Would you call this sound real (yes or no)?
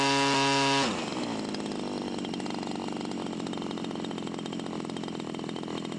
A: yes